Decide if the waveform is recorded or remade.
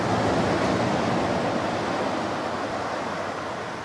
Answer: recorded